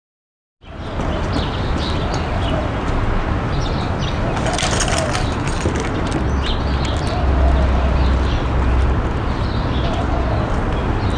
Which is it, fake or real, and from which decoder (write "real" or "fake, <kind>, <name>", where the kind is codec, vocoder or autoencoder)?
real